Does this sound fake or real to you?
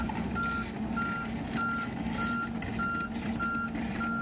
real